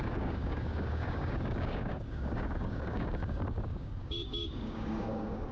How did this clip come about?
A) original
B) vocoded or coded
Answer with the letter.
B